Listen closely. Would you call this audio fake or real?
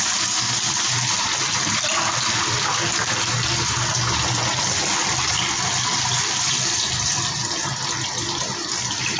real